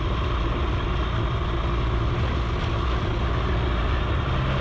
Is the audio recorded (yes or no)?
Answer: yes